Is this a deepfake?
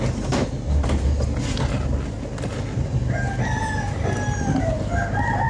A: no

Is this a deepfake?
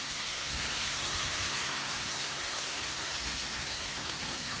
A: yes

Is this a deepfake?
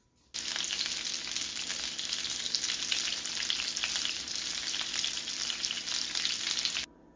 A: no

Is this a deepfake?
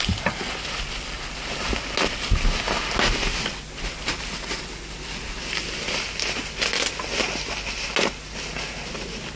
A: no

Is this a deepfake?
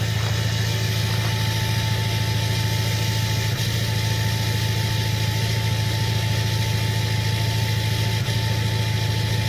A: no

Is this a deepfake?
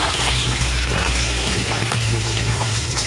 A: yes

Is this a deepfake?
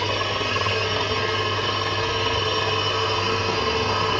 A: yes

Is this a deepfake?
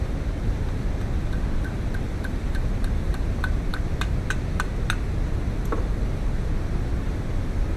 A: no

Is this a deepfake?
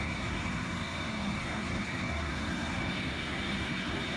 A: yes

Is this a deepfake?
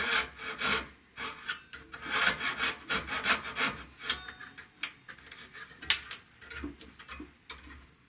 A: no